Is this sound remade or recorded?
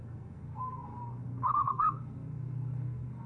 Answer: remade